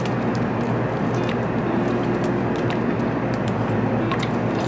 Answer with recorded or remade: recorded